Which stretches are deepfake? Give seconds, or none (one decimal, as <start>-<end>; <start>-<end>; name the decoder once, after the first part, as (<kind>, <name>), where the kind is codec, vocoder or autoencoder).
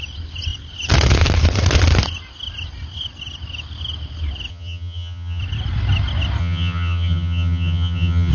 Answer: 4.5-5.4 (vocoder, HiFi-GAN); 6.4-8.3